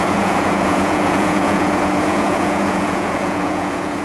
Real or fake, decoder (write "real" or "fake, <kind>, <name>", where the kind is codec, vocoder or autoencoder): fake, vocoder, Vocos